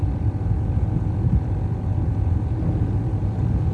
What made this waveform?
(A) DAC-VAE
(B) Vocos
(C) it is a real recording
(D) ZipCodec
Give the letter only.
C